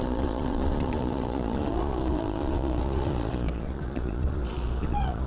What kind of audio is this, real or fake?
fake